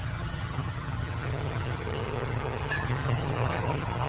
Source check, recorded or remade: remade